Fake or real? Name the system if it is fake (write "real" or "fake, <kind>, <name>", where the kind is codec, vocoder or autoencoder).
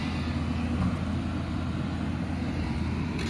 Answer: real